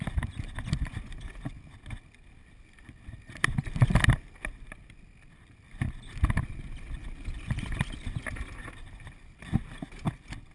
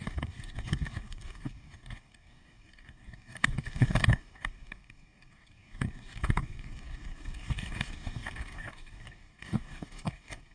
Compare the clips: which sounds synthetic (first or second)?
second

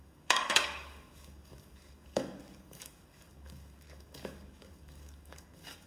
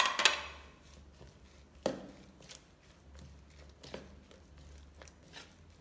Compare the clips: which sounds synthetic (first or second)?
first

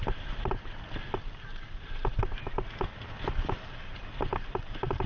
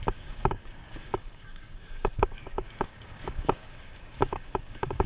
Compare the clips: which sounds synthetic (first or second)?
second